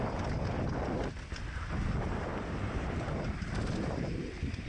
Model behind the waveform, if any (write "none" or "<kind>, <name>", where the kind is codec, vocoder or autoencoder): none